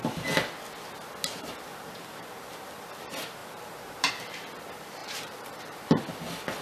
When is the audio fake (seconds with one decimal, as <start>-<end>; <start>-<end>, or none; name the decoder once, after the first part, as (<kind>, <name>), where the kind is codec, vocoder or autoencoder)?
1.7-2.9 (vocoder, BigVGAN v2); 3.4-4.1; 5.0-6.0